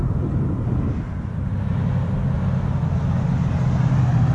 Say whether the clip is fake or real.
real